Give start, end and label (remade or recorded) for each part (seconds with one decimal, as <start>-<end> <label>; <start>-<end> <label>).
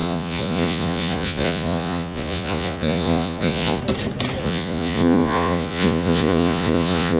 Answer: 0.0-3.8 remade; 3.8-4.4 recorded; 4.4-7.2 remade